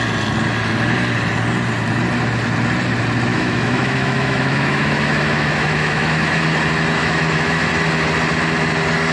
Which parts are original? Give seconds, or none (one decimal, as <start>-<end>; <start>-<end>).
0.0-3.3; 6.3-7.0; 7.7-9.1